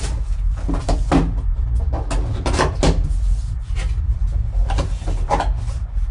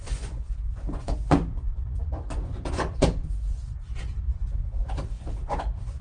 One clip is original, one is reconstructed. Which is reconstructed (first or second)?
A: second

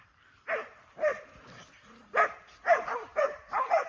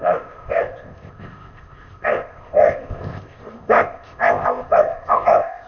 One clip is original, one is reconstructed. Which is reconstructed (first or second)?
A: second